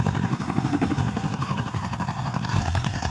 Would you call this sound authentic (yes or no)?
no